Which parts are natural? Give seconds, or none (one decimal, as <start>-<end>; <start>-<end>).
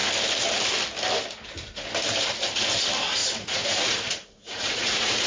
0.0-3.2